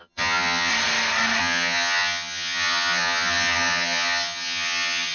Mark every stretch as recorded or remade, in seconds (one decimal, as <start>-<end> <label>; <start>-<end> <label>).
0.0-0.7 remade; 0.7-1.4 recorded; 1.4-5.1 remade